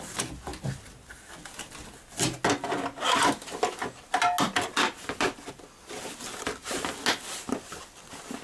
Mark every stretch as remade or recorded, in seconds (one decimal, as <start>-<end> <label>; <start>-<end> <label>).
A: 0.0-8.4 recorded